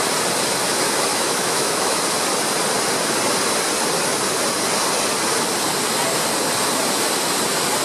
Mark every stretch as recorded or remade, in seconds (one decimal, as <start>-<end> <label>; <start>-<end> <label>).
0.0-1.1 recorded; 1.1-2.0 remade; 2.0-7.8 recorded